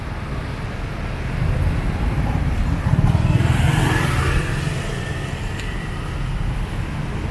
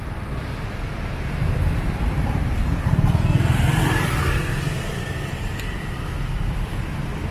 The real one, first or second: first